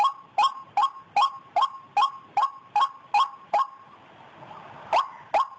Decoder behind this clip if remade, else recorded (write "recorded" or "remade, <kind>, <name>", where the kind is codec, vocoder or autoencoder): recorded